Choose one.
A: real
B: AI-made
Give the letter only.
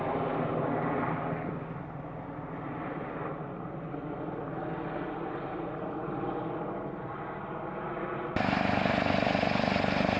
A